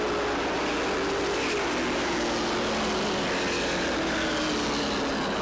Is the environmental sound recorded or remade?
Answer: recorded